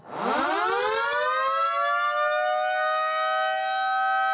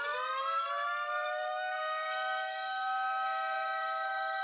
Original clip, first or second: first